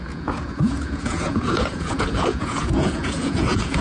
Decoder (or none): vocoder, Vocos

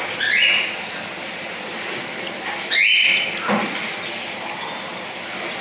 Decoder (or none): none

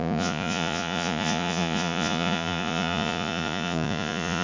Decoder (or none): vocoder, Vocos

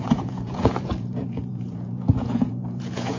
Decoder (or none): vocoder, Vocos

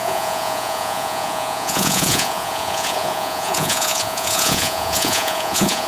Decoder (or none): vocoder, Vocos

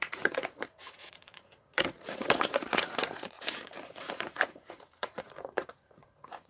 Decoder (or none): vocoder, Vocos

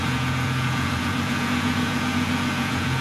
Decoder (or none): vocoder, Vocos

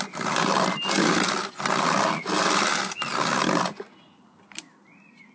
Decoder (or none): none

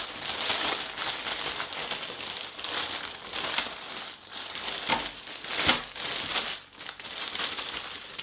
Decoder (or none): none